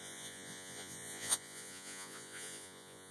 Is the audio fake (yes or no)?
yes